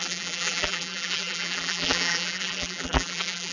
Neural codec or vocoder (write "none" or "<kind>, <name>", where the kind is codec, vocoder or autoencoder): vocoder, BigVGAN v2